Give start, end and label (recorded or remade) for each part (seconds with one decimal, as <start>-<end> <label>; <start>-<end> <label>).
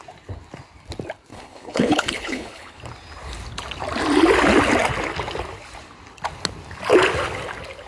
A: 0.0-1.3 recorded; 1.3-2.8 remade; 2.8-7.9 recorded